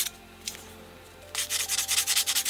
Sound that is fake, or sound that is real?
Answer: real